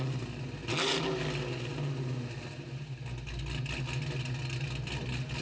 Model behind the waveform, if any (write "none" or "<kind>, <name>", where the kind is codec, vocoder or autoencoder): none